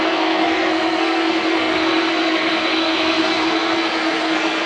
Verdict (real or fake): fake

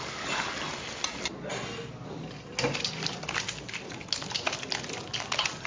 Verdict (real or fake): real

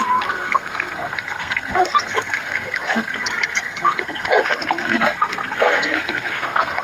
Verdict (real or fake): fake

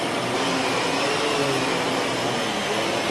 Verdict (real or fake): real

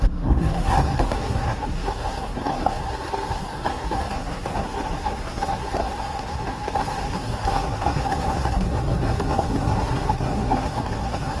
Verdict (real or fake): fake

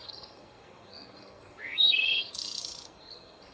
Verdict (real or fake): fake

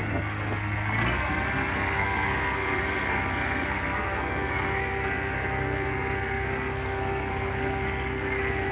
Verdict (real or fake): fake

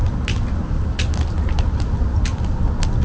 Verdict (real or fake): real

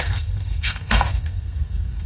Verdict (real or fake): fake